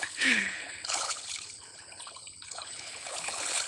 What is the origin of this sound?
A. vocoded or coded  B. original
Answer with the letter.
A